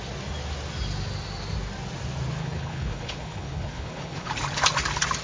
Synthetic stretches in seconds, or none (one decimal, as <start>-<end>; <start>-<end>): 2.4-4.3